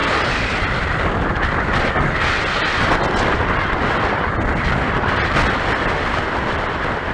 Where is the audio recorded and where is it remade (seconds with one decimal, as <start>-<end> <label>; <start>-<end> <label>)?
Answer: 0.0-7.1 recorded